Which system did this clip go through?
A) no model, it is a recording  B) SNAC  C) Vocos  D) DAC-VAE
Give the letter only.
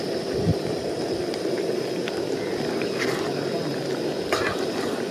A